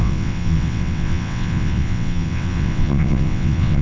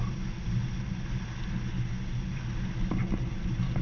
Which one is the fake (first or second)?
first